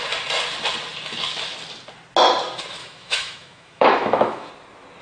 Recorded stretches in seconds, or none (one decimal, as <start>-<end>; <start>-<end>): 0.0-2.8; 4.5-5.0